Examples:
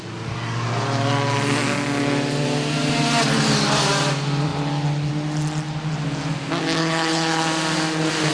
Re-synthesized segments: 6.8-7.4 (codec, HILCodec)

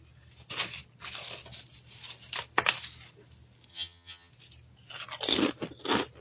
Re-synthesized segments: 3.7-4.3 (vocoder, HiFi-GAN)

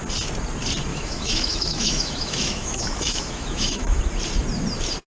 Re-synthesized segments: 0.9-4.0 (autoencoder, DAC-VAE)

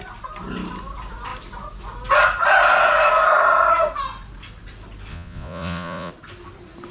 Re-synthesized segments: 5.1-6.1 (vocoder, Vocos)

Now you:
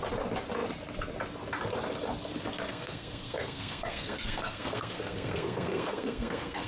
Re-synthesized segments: 2.7-6.7 (codec, SNAC)